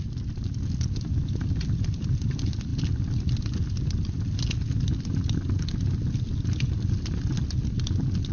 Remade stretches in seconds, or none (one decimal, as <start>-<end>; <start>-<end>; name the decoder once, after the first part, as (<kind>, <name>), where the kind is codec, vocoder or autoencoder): none